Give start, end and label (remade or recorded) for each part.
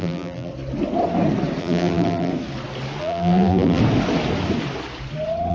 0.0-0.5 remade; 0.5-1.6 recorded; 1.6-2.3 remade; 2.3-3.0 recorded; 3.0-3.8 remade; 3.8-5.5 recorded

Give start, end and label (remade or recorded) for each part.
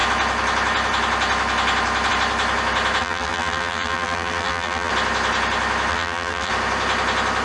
0.0-3.0 recorded; 3.0-4.9 remade; 4.9-5.9 recorded; 5.9-6.5 remade; 6.5-7.4 recorded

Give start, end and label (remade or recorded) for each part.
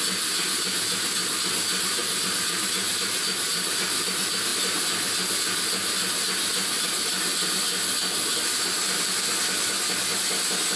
0.0-2.0 recorded; 2.0-3.7 remade; 3.7-10.8 recorded